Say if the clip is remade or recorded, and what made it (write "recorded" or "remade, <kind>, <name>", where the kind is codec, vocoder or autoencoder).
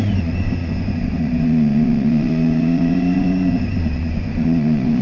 remade, vocoder, Vocos